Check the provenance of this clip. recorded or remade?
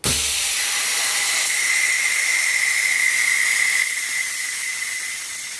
recorded